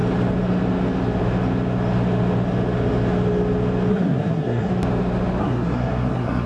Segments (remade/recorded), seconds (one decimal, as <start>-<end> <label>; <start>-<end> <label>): 0.0-3.9 recorded; 3.9-4.7 remade; 4.7-5.4 recorded; 5.4-6.5 remade